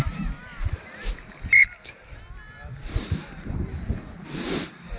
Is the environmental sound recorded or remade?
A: recorded